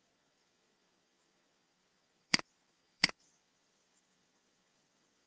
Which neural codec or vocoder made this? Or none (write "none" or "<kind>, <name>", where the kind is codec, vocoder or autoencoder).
vocoder, Vocos